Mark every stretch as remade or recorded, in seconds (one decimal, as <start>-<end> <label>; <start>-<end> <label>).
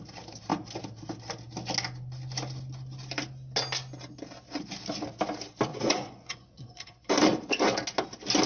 0.0-5.7 recorded; 5.7-7.1 remade; 7.1-8.5 recorded